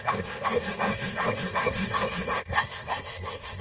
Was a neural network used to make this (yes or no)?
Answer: yes